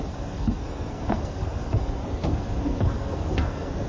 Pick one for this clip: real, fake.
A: fake